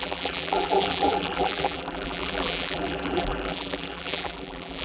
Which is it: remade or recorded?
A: remade